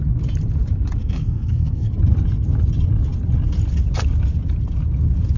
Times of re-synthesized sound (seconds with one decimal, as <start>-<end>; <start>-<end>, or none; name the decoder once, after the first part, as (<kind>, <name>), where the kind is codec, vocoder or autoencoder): 1.0-1.9 (codec, SNAC)